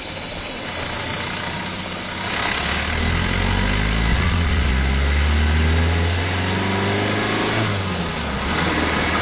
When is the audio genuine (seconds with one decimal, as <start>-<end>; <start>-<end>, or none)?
0.0-4.1; 4.7-9.2